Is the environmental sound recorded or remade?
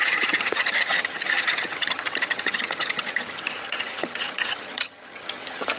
remade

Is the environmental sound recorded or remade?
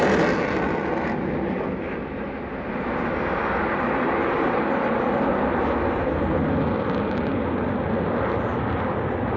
recorded